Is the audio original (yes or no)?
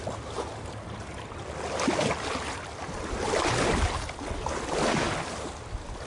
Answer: yes